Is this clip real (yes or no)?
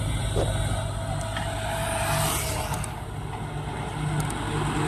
yes